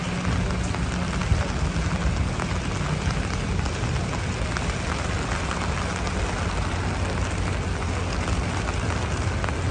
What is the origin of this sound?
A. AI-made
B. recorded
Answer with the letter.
B